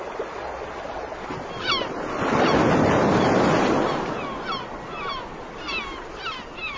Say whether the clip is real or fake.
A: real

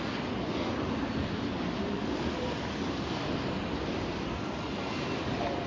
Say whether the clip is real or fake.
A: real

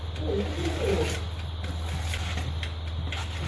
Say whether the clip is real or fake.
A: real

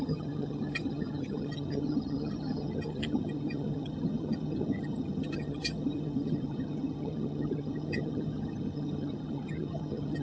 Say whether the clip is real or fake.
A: fake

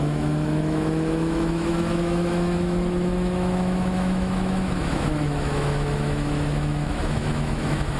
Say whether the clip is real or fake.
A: fake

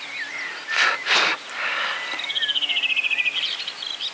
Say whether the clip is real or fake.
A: real